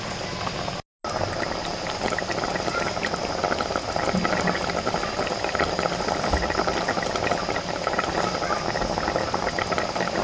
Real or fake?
real